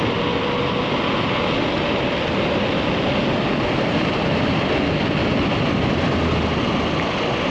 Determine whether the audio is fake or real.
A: real